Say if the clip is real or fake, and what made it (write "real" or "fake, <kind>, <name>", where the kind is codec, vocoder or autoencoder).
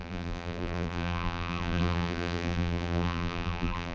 fake, vocoder, BigVGAN v2